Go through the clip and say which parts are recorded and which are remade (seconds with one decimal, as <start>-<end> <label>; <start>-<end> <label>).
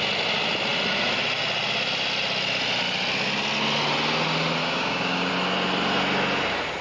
0.0-4.6 recorded; 4.6-5.3 remade; 5.3-6.8 recorded